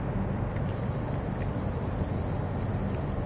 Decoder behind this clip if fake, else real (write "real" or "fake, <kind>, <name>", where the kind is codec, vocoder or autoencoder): real